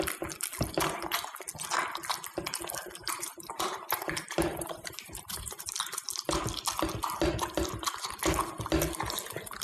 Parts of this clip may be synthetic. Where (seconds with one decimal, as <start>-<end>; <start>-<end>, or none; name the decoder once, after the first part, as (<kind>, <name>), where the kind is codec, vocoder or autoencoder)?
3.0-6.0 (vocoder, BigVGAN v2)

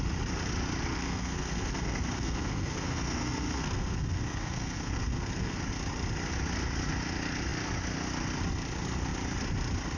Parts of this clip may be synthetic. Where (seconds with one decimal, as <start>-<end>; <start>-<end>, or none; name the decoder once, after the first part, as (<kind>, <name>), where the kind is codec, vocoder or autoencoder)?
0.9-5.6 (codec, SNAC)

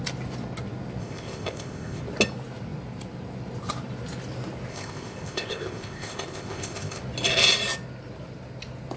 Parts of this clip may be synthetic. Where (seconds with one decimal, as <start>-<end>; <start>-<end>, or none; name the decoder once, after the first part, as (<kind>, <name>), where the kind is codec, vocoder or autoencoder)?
1.0-2.0 (codec, ZipCodec); 4.7-7.0